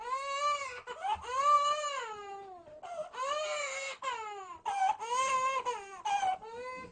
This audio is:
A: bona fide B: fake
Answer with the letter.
A